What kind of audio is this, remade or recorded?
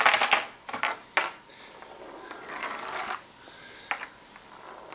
recorded